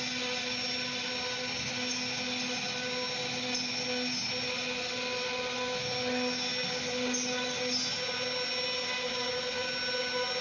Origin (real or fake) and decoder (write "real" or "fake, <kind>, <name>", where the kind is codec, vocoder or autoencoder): real